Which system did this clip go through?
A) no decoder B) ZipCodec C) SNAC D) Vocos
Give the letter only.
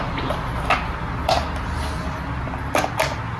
A